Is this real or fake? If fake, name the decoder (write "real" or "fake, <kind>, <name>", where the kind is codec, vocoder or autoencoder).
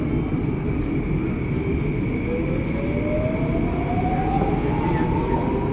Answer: real